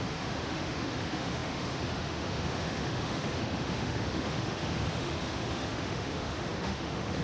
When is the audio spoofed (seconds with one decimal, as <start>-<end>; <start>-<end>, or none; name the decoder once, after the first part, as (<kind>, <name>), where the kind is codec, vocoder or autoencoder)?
0.0-7.2 (autoencoder, DAC-VAE)